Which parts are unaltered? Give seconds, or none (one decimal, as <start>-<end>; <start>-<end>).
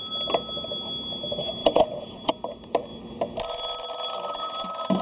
0.0-1.6; 2.3-5.0